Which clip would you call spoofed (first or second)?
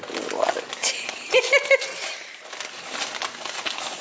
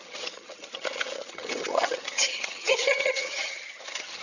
second